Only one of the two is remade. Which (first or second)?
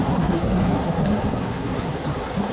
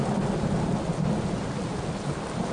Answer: first